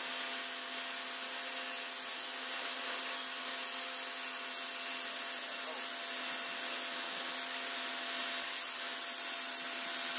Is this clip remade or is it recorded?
recorded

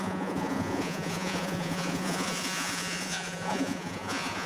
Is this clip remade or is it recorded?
remade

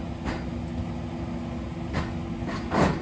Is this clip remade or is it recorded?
recorded